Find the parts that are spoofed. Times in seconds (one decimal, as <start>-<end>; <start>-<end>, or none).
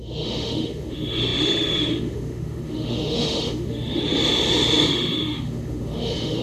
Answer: 0.0-4.0; 4.9-6.4